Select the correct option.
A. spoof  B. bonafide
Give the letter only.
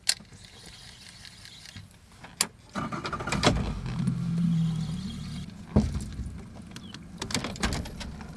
B